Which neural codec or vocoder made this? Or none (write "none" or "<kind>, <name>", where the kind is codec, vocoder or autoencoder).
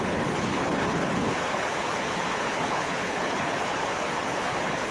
codec, HILCodec